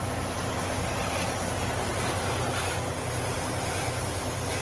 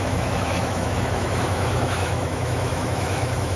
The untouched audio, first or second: first